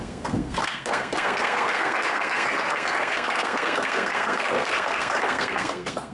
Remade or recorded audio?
remade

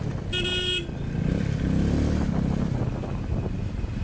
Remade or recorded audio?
recorded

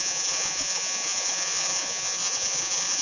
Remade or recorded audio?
remade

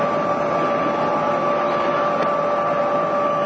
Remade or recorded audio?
recorded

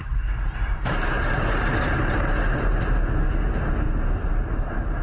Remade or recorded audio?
recorded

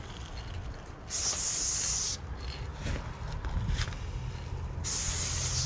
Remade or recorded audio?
recorded